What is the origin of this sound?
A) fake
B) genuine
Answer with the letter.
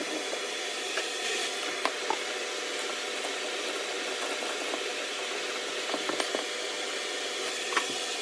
B